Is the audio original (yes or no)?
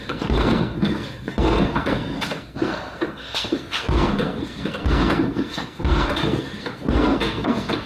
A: no